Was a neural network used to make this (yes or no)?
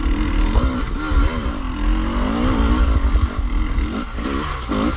no